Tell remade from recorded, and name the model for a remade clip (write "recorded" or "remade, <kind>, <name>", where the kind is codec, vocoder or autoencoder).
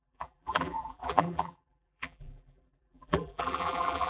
remade, vocoder, BigVGAN v2